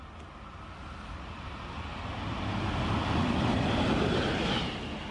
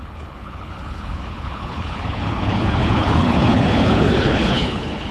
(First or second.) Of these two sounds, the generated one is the second